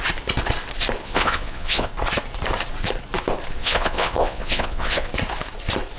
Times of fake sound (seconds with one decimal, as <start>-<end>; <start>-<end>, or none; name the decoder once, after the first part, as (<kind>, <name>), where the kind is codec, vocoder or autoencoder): 1.0-1.9 (vocoder, Vocos); 3.6-5.1